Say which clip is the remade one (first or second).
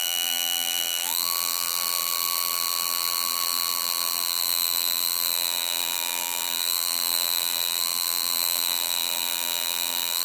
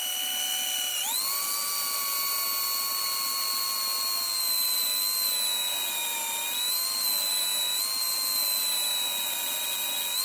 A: first